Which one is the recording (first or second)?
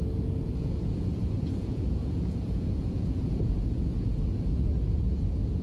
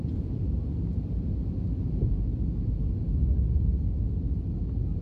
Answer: second